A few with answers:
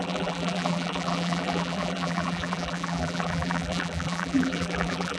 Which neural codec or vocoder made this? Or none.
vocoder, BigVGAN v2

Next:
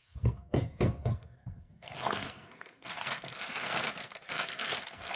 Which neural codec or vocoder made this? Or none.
codec, SNAC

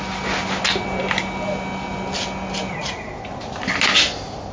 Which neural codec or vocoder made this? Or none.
none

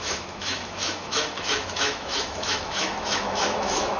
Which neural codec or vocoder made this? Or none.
autoencoder, DAC-VAE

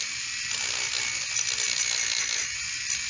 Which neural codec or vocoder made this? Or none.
none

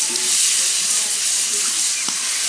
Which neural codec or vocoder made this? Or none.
none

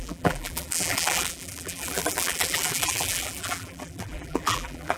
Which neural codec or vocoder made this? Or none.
vocoder, BigVGAN v2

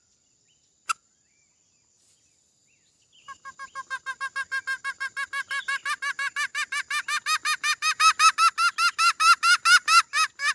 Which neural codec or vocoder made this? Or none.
none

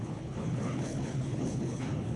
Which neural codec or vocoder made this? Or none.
codec, HILCodec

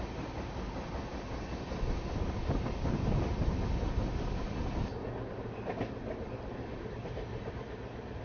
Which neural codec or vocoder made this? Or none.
none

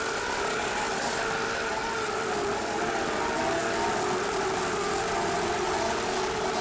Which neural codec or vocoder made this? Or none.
none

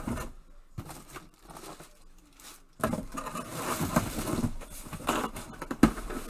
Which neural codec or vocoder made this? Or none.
none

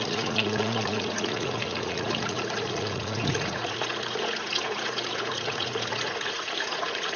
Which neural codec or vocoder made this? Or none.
vocoder, Vocos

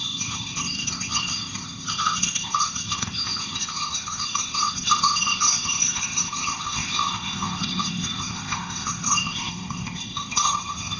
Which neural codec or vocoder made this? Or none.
codec, ZipCodec